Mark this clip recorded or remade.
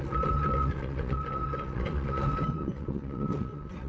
remade